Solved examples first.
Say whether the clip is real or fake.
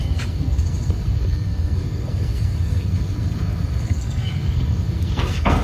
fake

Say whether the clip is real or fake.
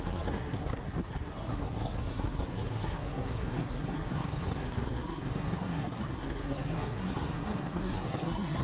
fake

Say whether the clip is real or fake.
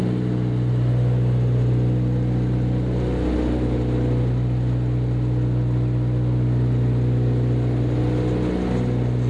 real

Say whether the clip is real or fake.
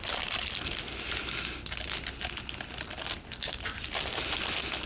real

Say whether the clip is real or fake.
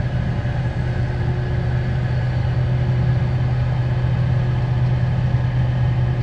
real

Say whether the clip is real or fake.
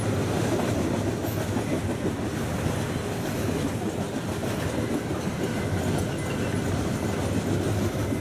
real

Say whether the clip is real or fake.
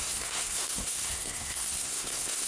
fake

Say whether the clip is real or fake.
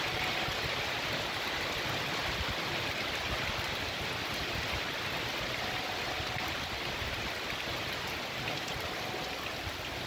real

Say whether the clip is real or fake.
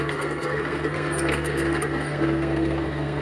fake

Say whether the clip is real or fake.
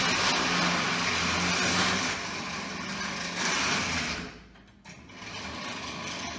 real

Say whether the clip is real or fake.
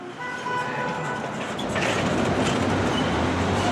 real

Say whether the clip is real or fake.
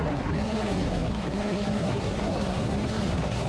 fake